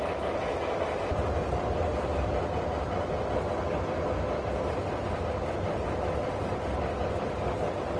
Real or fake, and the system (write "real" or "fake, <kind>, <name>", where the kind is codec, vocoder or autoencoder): real